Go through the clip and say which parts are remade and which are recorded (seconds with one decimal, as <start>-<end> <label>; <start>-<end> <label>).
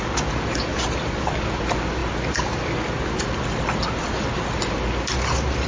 0.0-5.7 recorded